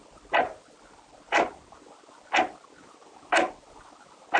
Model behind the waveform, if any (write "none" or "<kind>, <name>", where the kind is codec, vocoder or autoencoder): none